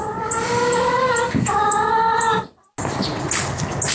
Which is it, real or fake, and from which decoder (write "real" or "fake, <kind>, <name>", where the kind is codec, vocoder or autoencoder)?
real